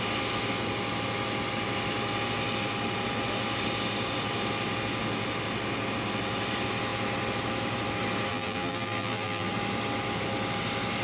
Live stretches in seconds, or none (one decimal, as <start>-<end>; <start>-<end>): 0.0-8.3; 9.5-11.0